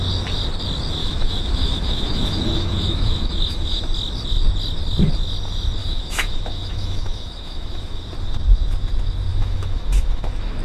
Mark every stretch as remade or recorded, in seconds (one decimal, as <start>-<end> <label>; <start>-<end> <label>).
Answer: 0.0-1.0 recorded; 1.0-3.8 remade; 3.8-5.8 recorded; 5.8-8.0 remade; 8.0-9.3 recorded; 9.3-10.6 remade